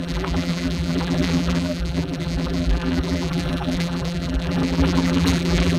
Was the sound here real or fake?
fake